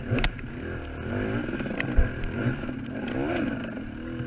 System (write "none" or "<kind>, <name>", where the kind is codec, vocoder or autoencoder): none